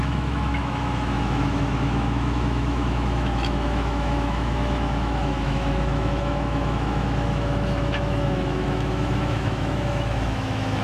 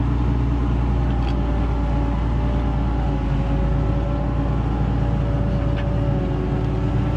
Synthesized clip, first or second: first